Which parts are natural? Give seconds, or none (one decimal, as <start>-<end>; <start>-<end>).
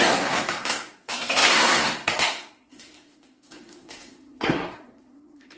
none